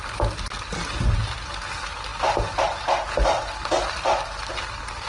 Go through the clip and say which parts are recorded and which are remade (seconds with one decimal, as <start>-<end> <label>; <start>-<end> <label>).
0.0-5.1 recorded